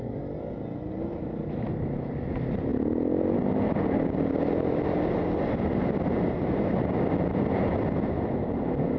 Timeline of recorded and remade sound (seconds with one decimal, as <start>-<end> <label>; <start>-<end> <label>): 0.0-9.0 recorded